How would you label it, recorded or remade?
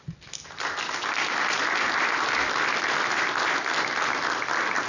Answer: recorded